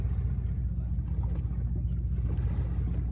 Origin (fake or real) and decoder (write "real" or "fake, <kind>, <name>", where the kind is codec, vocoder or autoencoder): real